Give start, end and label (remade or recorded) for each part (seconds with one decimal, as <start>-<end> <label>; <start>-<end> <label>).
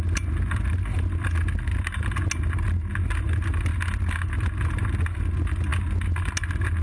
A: 0.0-6.8 recorded